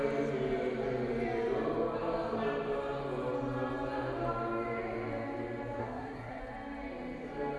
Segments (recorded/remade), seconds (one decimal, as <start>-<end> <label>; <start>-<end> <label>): 0.0-5.8 recorded; 5.8-6.4 remade; 6.4-7.6 recorded